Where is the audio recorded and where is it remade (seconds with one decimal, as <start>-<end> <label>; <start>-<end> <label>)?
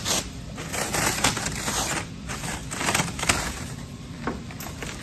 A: 0.0-0.7 recorded; 0.7-2.1 remade; 2.1-2.6 recorded; 2.6-4.2 remade; 4.2-5.0 recorded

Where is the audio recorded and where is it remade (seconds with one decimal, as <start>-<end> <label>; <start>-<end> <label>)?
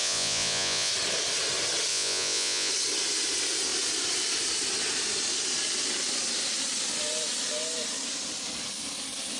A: 0.0-0.9 remade; 0.9-1.9 recorded; 1.9-2.7 remade; 2.7-9.4 recorded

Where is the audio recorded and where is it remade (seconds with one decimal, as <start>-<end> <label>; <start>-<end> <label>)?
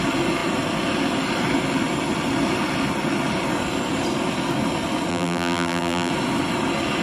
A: 0.0-5.1 recorded; 5.1-6.1 remade; 6.1-7.0 recorded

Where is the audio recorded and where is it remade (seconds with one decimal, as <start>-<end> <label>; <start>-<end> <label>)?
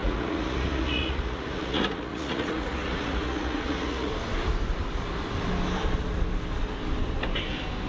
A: 0.0-4.1 remade; 4.1-7.9 recorded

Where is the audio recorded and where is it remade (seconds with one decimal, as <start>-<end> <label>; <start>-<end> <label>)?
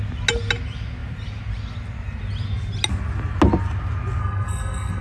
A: 0.0-4.2 recorded; 4.2-5.0 remade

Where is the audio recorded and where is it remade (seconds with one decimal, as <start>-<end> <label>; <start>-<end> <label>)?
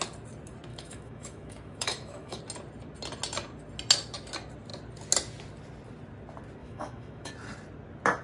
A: 0.0-0.7 recorded; 0.7-2.4 remade; 2.4-6.6 recorded; 6.6-7.3 remade; 7.3-8.2 recorded